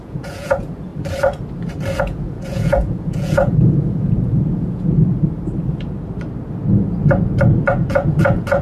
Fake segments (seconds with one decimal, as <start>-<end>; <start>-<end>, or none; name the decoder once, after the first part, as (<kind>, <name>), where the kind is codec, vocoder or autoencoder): 0.0-0.9 (vocoder, Vocos); 2.0-5.0; 7.9-8.6